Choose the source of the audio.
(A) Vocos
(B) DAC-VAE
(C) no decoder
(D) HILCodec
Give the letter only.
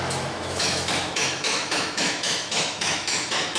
B